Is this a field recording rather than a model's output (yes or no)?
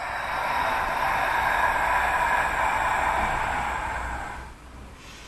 yes